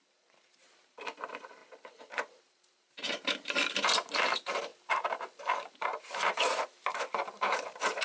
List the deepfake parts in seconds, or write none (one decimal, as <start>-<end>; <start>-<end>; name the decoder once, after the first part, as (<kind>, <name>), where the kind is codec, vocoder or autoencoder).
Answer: 0.0-1.6 (vocoder, BigVGAN v2); 2.4-4.7; 5.7-8.0